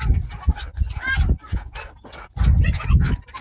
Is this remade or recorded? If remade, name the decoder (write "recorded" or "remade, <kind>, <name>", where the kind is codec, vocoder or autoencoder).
recorded